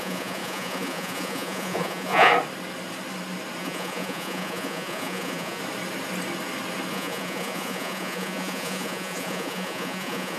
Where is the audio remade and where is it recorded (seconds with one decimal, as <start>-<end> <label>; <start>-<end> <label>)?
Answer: 0.0-2.3 remade; 2.3-3.6 recorded; 3.6-5.6 remade; 5.6-6.9 recorded; 6.9-10.4 remade